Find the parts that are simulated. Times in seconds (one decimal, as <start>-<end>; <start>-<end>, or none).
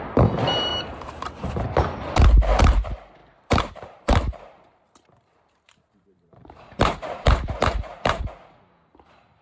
0.7-1.5; 3.2-8.3